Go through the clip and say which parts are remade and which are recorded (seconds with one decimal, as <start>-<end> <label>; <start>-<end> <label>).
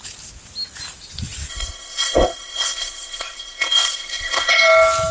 0.0-1.5 recorded; 1.5-4.6 remade; 4.6-5.1 recorded